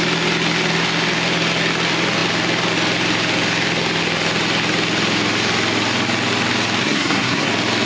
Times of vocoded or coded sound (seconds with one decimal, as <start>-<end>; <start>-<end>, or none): 6.8-7.5